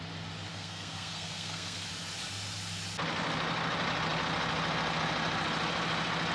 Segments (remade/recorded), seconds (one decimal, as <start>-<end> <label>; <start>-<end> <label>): 0.0-0.5 recorded; 0.5-1.9 remade; 1.9-6.3 recorded